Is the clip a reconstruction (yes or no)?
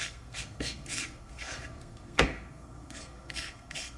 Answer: yes